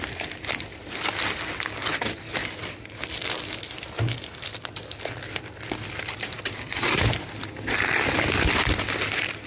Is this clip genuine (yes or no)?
yes